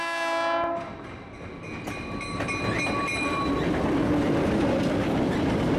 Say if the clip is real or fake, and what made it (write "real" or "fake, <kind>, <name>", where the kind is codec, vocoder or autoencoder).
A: real